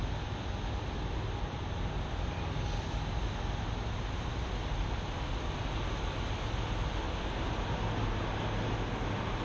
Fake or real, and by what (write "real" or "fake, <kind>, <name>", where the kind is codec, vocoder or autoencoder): real